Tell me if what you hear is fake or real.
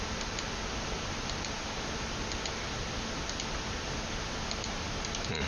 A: real